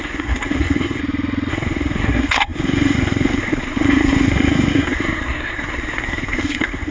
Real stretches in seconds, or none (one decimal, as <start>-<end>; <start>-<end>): 1.0-1.5